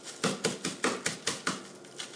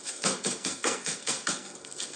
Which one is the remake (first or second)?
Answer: second